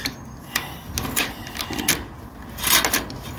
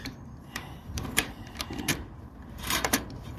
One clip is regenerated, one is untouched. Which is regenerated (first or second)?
second